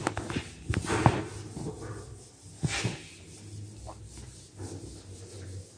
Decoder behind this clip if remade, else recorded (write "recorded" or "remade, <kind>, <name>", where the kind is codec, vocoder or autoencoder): recorded